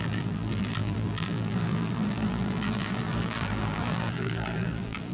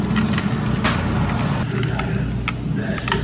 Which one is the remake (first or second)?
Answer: first